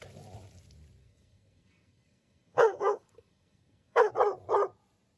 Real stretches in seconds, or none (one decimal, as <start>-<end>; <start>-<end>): 0.0-1.0; 4.1-5.2